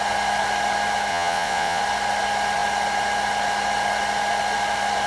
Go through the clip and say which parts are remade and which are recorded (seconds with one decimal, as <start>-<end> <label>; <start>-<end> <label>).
0.0-1.1 recorded; 1.1-1.8 remade; 1.8-5.1 recorded